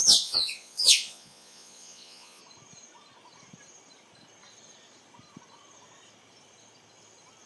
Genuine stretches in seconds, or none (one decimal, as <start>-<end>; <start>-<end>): 2.4-7.5